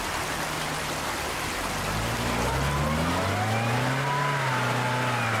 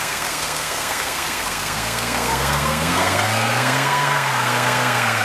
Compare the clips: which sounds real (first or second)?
first